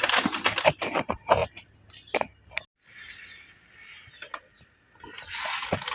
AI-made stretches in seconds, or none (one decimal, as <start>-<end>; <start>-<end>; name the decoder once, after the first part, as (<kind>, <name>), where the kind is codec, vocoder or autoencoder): none